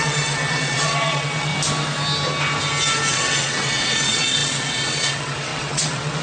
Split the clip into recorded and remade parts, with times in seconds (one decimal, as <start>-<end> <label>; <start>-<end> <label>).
0.0-1.5 remade; 1.5-3.1 recorded; 3.1-6.2 remade